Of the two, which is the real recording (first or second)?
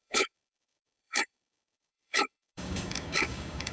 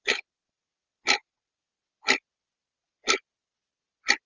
second